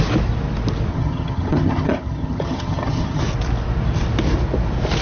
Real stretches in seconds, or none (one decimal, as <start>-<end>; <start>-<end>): 0.0-0.9; 3.2-5.0